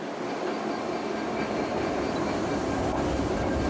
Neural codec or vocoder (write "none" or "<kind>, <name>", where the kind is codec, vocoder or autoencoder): none